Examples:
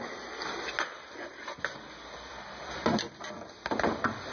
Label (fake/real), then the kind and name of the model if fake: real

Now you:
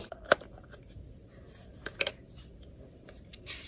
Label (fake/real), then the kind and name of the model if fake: real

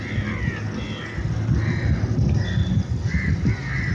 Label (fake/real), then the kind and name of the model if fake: real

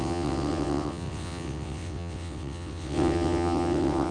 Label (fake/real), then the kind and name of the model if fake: fake, vocoder, WaveNeXt